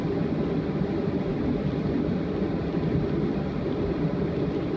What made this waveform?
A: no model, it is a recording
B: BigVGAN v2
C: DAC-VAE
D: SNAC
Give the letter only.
A